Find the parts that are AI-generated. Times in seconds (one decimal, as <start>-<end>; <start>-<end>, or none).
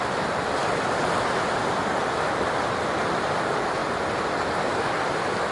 none